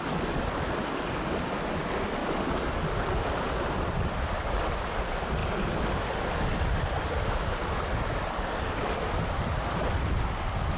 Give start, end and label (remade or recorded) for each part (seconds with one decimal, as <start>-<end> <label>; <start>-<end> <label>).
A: 0.0-10.8 recorded

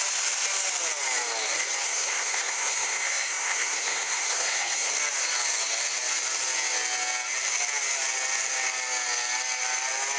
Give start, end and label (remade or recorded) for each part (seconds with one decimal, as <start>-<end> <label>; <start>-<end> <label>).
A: 0.0-1.8 recorded; 1.8-4.9 remade; 4.9-10.2 recorded

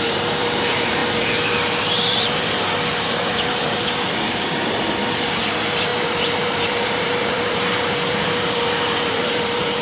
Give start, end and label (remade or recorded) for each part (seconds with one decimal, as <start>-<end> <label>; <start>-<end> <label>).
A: 0.0-9.8 remade

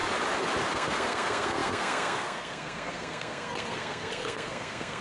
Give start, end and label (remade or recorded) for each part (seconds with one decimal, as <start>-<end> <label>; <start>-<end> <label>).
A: 0.0-0.7 recorded; 0.7-5.0 remade

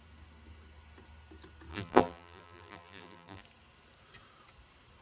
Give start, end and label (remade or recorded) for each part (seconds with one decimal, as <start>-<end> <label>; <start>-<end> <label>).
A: 0.0-1.7 recorded; 1.7-3.4 remade; 3.4-5.0 recorded

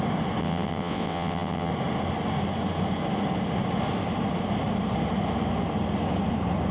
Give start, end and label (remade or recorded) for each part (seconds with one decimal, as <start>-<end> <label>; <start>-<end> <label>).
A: 0.0-0.4 recorded; 0.4-1.7 remade; 1.7-6.7 recorded

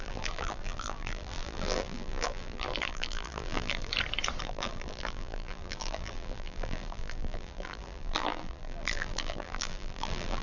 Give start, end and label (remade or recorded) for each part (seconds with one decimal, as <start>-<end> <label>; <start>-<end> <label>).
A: 0.0-3.9 remade; 3.9-4.4 recorded; 4.4-10.4 remade

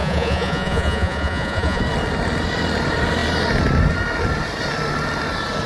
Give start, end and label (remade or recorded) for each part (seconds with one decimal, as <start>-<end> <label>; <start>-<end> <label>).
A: 0.0-1.8 remade; 1.8-5.7 recorded